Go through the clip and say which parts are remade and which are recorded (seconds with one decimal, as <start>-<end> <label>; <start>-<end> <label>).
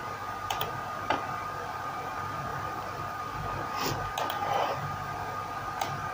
0.0-2.5 recorded; 2.5-3.2 remade; 3.2-4.4 recorded; 4.4-5.4 remade; 5.4-6.1 recorded